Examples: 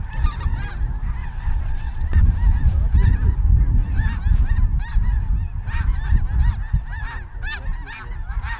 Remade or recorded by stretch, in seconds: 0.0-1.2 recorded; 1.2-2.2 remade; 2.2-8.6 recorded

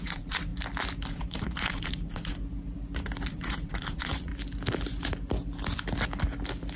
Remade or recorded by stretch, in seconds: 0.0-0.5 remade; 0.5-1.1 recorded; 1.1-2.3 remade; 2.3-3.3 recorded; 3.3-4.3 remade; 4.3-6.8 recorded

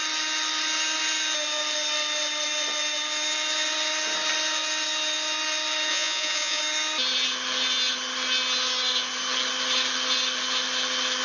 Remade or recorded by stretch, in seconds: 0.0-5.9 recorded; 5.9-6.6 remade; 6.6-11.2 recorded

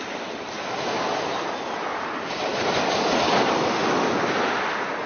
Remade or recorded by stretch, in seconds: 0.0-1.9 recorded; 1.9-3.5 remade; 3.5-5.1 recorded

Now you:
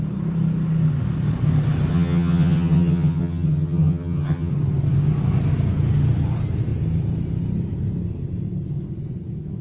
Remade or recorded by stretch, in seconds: 0.0-1.9 recorded; 1.9-4.5 remade; 4.5-9.6 recorded